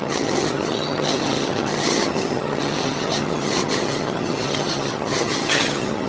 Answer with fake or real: fake